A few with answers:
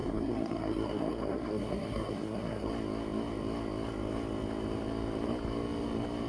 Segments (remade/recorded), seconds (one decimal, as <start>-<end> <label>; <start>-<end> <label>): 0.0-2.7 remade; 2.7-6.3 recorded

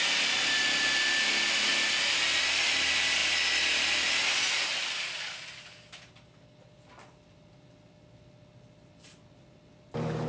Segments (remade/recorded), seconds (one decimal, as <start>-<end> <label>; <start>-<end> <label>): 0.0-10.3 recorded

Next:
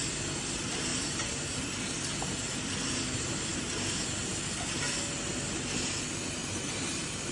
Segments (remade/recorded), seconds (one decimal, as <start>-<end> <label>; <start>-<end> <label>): 0.0-0.9 recorded; 0.9-1.8 remade; 1.8-6.4 recorded; 6.4-7.3 remade

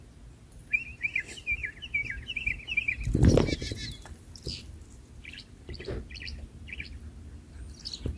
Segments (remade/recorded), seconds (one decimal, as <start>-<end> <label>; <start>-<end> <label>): 0.0-8.2 recorded

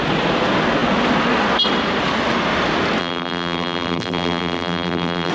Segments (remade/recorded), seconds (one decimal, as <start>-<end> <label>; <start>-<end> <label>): 0.0-3.0 recorded; 3.0-5.3 remade

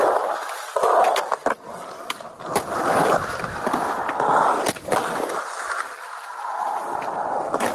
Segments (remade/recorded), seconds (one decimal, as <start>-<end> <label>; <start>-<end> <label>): 0.0-7.7 recorded

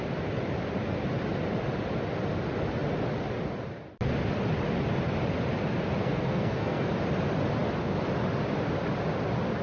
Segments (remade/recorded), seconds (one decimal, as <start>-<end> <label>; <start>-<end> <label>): 0.0-6.0 recorded; 6.0-6.9 remade; 6.9-9.6 recorded